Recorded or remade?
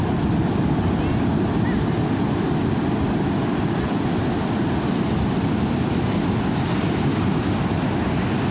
recorded